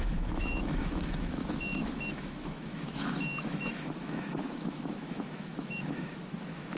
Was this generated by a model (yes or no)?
yes